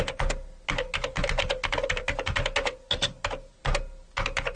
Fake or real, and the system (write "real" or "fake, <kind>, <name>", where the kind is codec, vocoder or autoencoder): real